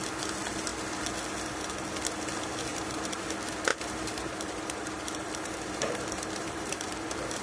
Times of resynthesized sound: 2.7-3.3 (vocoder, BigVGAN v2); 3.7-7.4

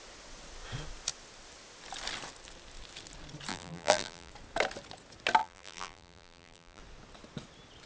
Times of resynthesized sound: 3.5-4.3 (vocoder, BigVGAN v2); 5.4-6.8

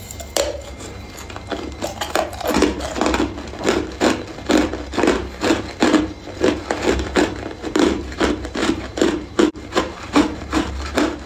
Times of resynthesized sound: 7.6-8.2 (vocoder, BigVGAN v2); 8.6-10.7

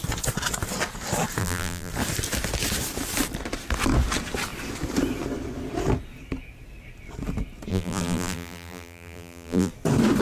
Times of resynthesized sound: 1.4-1.9 (vocoder, BigVGAN v2); 7.7-9.7

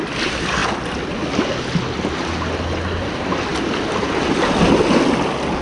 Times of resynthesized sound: none